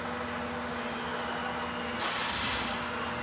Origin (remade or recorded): recorded